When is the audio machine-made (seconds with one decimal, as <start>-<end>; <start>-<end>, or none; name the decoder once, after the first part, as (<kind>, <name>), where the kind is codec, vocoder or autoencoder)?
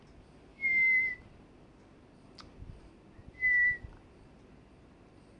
0.5-1.1 (autoencoder, DAC-VAE)